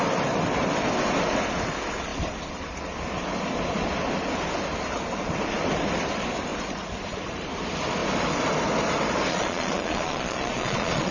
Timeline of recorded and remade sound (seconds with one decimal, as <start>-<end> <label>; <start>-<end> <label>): 0.0-9.3 recorded; 9.3-11.1 remade